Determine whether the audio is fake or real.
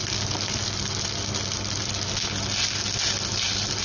real